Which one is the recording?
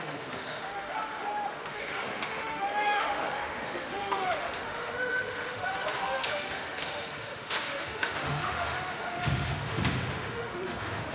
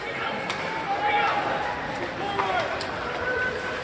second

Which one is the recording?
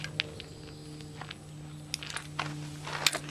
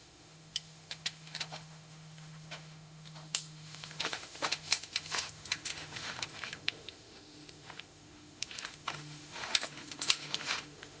first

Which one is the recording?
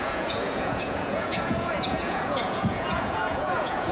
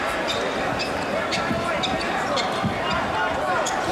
second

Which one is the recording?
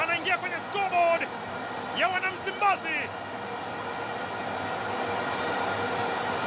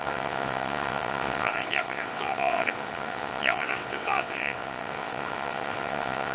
first